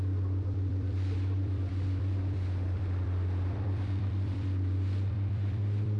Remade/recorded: remade